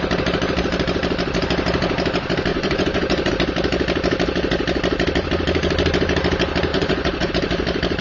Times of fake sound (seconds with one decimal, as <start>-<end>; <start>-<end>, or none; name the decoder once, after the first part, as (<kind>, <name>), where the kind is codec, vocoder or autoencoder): 2.5-3.3 (vocoder, Vocos); 6.7-7.3